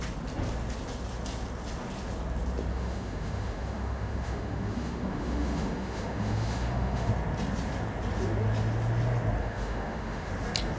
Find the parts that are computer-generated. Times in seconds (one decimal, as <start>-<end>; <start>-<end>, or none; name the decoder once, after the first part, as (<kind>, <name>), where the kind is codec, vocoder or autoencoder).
2.7-7.1 (autoencoder, DAC-VAE); 9.4-10.3